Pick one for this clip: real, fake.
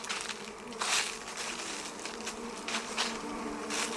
real